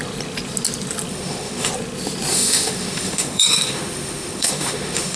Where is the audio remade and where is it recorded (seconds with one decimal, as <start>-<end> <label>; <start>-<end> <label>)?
0.0-1.1 recorded; 1.1-1.7 remade; 1.7-2.3 recorded; 2.3-5.2 remade